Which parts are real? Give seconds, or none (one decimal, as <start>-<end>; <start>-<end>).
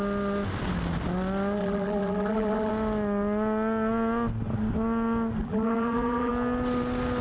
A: 0.0-1.6; 2.7-5.4; 6.3-7.2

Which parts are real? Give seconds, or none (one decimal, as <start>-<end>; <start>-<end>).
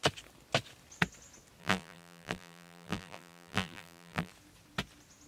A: 0.0-1.6; 4.3-5.3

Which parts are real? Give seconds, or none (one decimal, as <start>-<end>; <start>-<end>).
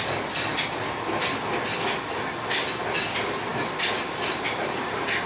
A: 0.0-3.5; 4.8-5.3